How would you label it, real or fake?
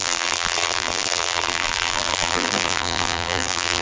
fake